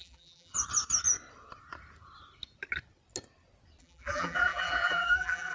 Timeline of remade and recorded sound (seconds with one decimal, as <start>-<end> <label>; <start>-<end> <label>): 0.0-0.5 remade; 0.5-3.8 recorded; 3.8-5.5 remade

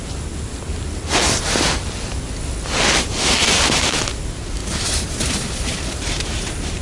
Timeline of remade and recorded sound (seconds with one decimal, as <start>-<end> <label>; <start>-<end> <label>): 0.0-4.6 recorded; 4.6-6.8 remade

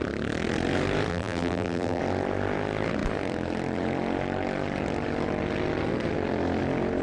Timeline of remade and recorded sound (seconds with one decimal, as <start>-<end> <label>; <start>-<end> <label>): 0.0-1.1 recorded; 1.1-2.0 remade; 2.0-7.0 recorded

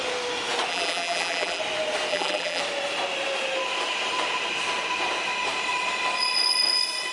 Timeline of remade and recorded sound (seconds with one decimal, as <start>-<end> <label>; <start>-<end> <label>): 0.0-0.7 recorded; 0.7-1.6 remade; 1.6-2.1 recorded; 2.1-2.6 remade; 2.6-7.1 recorded

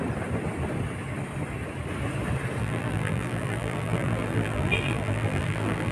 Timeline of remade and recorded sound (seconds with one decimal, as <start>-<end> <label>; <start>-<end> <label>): 0.0-2.6 recorded; 2.6-5.9 remade